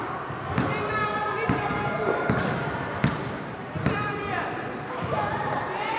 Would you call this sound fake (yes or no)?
no